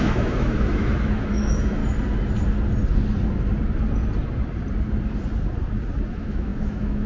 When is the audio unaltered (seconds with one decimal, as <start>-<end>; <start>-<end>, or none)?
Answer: 1.8-6.1